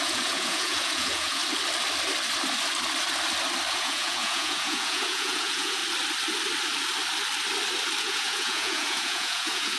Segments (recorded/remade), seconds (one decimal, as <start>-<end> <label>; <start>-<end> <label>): 0.0-1.4 remade; 1.4-3.7 recorded; 3.7-5.8 remade; 5.8-8.0 recorded; 8.0-9.8 remade